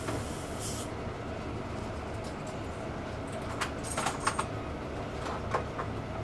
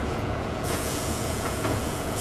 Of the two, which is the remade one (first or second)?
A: second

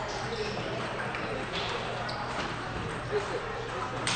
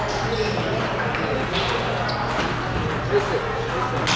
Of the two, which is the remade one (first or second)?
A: first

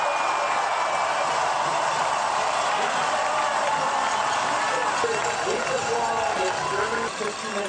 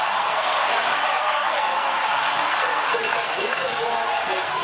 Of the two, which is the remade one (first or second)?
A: second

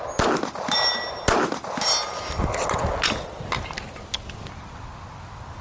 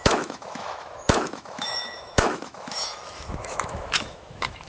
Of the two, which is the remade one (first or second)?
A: second